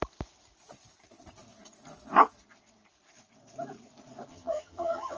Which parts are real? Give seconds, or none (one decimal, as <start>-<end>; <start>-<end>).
0.0-4.3

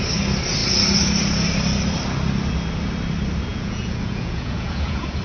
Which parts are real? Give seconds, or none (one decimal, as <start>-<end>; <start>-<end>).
0.0-3.5